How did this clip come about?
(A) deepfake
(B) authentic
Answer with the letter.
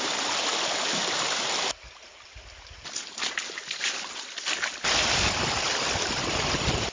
B